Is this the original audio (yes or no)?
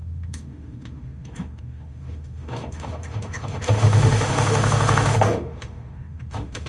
no